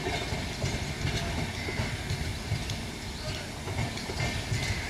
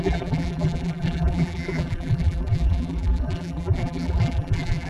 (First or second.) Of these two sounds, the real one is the first